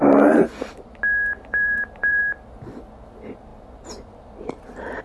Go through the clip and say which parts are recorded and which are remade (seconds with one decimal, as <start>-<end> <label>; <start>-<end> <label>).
0.0-1.5 recorded; 1.5-2.2 remade; 2.2-5.0 recorded